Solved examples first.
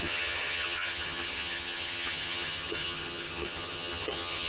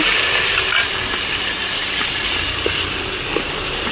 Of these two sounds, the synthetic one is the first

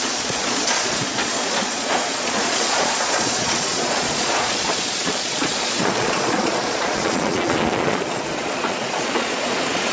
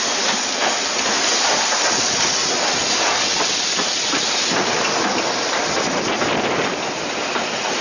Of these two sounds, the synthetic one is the first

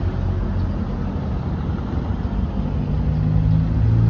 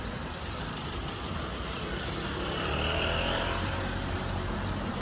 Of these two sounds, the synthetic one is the second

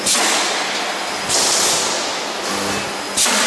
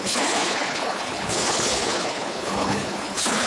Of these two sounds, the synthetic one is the second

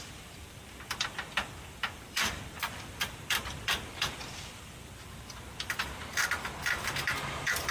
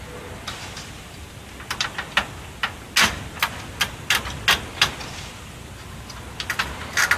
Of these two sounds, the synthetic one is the first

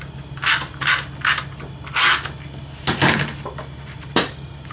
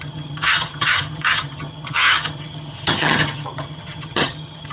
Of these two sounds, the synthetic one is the second